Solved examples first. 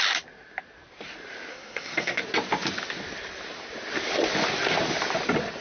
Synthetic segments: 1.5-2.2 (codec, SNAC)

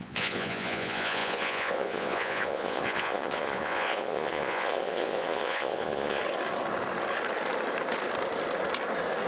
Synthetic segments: 0.0-6.2 (vocoder, Vocos)

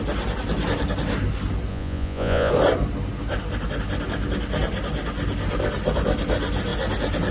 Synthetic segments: 1.7-2.5 (vocoder, Vocos)

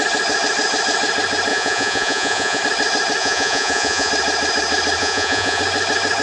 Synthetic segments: 1.5-2.6 (vocoder, Vocos); 3.2-4.1; 5.0-5.6

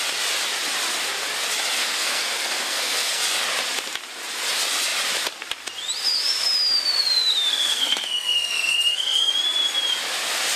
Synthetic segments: 1.8-3.2 (codec, SNAC); 7.5-9.3

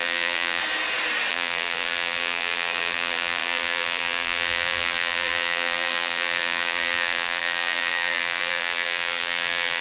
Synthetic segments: 0.0-0.6 (vocoder, BigVGAN v2); 1.3-9.8